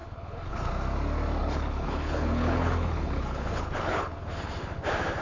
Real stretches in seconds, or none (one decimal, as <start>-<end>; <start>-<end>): 0.7-1.4; 4.2-5.2

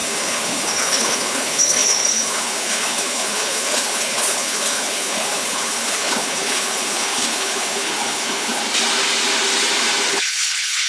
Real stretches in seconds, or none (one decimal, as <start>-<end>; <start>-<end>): 8.6-10.1

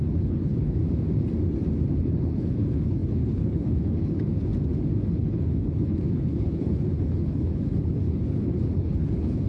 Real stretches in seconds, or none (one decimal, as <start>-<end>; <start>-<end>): 0.8-1.9; 4.5-5.1

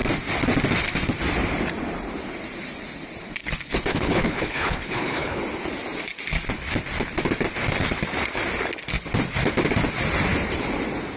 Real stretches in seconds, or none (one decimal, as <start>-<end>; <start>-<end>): 0.0-3.9; 5.4-11.2

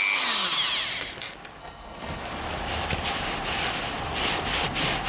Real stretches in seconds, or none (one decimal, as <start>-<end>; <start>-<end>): 0.0-1.6; 2.2-5.1

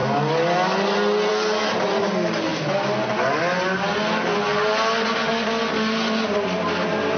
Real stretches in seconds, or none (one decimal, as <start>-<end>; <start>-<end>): 0.0-7.2

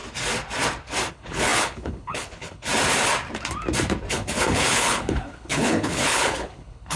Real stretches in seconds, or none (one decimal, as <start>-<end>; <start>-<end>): 0.0-1.1; 2.7-4.1

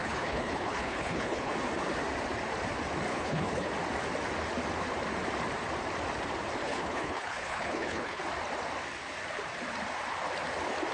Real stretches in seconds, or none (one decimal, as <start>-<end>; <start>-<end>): 1.5-3.1; 3.7-6.6; 8.2-10.9